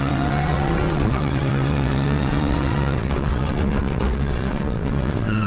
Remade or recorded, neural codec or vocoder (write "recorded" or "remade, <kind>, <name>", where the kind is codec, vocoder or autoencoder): remade, vocoder, WaveNeXt